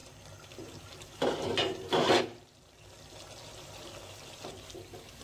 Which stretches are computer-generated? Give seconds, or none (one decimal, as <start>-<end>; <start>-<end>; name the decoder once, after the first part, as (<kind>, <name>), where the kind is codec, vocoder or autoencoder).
0.0-2.2 (vocoder, BigVGAN v2)